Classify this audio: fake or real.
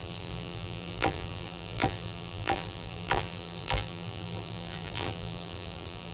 fake